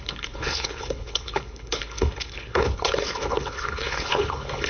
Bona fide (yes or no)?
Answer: no